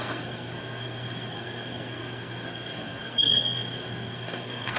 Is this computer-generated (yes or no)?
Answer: yes